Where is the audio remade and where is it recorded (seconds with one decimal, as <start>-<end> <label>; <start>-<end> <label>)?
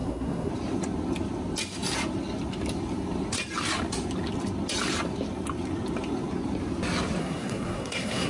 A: 0.0-0.5 remade; 0.5-7.2 recorded; 7.2-8.3 remade